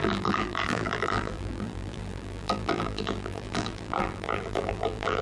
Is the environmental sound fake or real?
fake